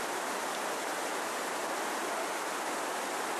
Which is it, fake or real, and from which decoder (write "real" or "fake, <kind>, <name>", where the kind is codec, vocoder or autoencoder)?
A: real